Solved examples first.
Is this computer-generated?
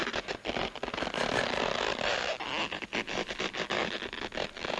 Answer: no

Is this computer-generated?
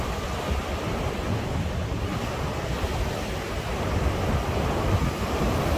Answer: no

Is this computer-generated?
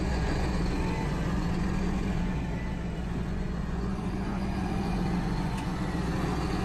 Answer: yes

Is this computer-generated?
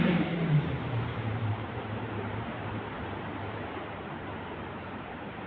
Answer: yes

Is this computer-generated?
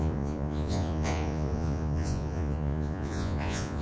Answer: yes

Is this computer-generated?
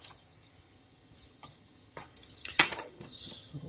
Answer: yes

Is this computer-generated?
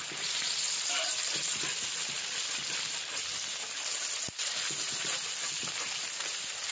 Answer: no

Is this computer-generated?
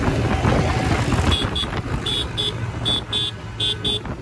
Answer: no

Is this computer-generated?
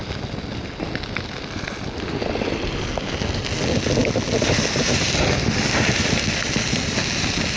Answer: no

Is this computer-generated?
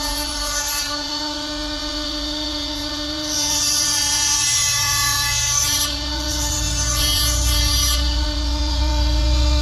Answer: yes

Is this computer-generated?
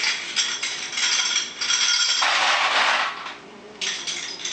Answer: no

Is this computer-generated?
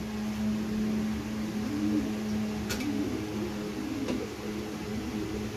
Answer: no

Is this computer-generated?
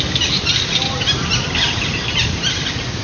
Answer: yes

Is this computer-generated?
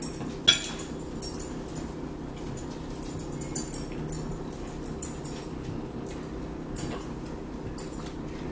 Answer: no